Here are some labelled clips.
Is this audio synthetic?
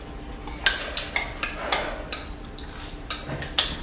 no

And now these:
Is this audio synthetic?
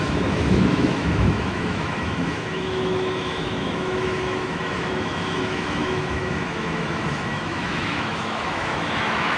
yes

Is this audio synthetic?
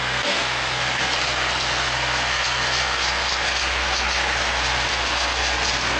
yes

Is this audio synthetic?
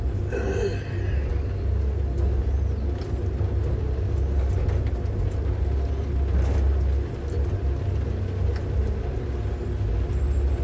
no